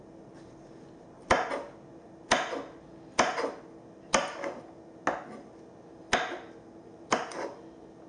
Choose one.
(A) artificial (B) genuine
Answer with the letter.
B